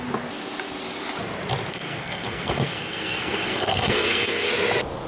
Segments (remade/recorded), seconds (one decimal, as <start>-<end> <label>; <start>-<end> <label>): 0.0-1.7 recorded; 1.7-4.5 remade; 4.5-5.1 recorded